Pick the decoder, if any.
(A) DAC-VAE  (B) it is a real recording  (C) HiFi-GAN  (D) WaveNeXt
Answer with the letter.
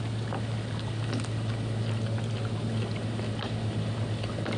B